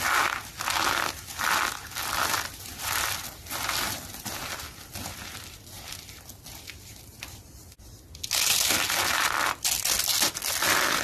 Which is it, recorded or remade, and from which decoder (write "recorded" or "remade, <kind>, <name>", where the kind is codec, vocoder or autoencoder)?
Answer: recorded